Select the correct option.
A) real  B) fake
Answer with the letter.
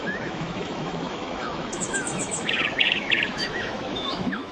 B